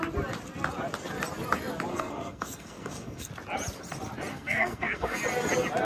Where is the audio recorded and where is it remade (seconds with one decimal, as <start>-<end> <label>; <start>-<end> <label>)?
0.0-1.9 recorded; 1.9-3.3 remade; 3.3-4.3 recorded; 4.3-5.2 remade; 5.2-5.8 recorded